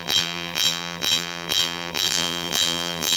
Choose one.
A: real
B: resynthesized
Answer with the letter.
B